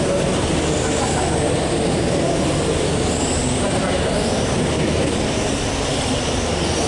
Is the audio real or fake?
real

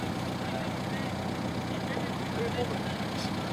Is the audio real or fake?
real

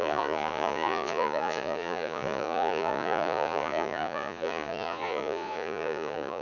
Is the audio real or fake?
fake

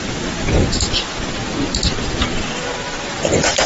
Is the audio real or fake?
real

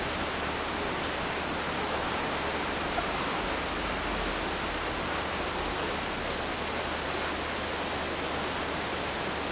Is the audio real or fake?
real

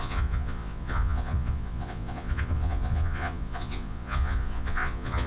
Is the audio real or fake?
fake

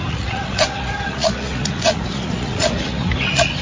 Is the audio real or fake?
fake